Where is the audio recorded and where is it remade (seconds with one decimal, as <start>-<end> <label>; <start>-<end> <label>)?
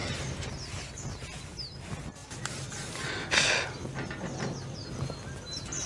0.0-0.5 remade; 0.5-5.9 recorded